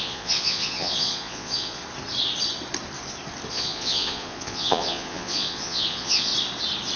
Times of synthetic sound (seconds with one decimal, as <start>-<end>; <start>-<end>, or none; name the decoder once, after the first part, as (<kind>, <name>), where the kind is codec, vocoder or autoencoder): 0.0-1.8 (vocoder, Vocos); 3.5-6.3